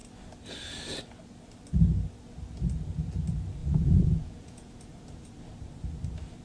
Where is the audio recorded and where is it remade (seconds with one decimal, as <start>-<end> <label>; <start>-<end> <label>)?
0.0-3.6 recorded; 3.6-4.7 remade; 4.7-6.4 recorded